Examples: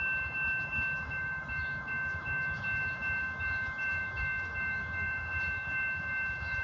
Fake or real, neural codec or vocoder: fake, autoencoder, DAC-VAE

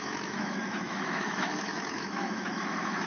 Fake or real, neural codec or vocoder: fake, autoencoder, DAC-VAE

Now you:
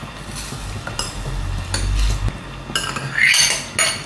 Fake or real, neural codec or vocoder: real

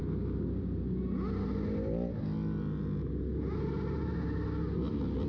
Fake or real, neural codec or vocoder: real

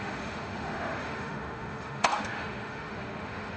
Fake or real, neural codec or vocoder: fake, autoencoder, DAC-VAE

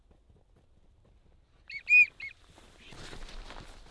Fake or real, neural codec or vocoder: real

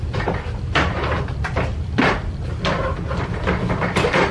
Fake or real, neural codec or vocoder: real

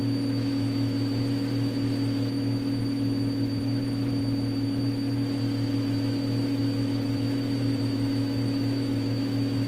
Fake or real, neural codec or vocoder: fake, autoencoder, DAC-VAE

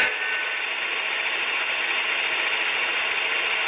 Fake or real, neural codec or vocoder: real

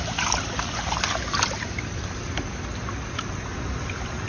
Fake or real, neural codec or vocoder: real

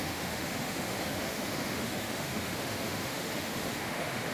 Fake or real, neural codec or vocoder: fake, autoencoder, DAC-VAE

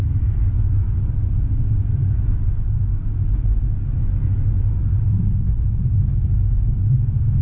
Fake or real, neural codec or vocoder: real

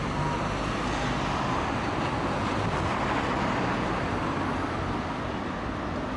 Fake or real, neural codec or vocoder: real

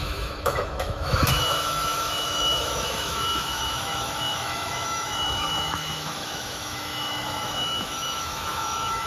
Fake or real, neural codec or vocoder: fake, autoencoder, DAC-VAE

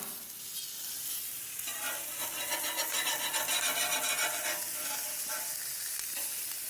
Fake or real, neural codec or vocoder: real